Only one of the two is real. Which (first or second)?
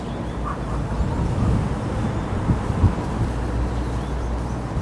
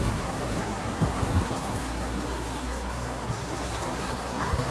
first